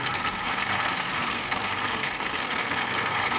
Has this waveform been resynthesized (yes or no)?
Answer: yes